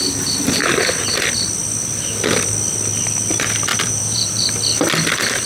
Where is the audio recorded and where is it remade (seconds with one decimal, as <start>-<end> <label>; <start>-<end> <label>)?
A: 0.0-3.7 recorded; 3.7-4.5 remade; 4.5-5.5 recorded